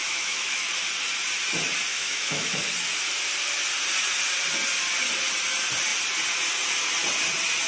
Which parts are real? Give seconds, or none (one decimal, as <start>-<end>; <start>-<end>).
0.7-1.9; 2.5-7.7